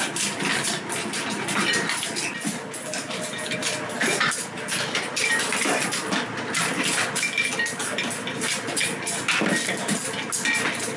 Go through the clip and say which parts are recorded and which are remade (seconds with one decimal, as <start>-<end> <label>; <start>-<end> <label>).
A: 0.0-11.0 recorded